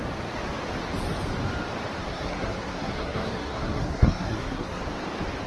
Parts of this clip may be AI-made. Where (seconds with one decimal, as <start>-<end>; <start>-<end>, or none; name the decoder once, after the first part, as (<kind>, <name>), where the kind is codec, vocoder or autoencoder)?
2.0-4.8 (codec, SNAC)